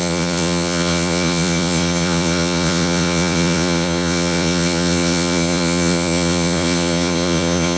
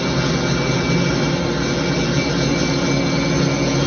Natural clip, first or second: second